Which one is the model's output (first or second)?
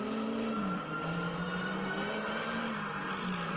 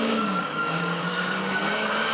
second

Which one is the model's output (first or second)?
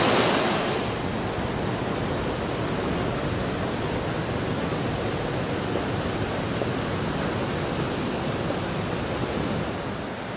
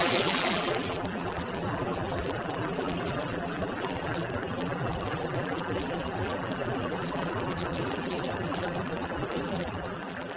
second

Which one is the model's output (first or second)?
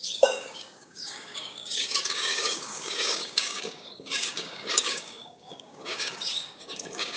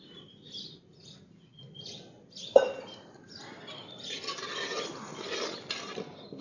first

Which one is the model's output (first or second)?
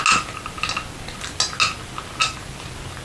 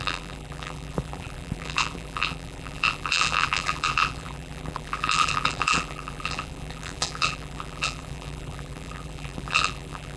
second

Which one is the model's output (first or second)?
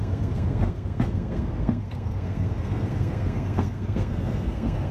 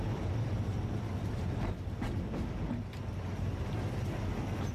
first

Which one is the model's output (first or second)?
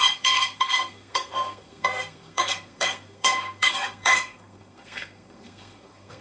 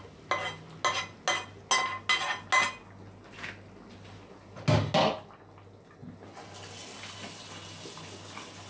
first